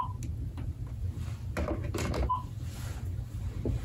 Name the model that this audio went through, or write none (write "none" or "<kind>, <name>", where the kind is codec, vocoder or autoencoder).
none